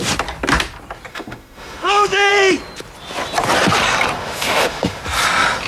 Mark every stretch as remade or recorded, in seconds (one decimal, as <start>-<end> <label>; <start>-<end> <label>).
0.0-1.1 recorded; 1.1-2.3 remade; 2.3-4.2 recorded; 4.2-5.0 remade; 5.0-5.7 recorded